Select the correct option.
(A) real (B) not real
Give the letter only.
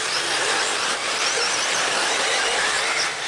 A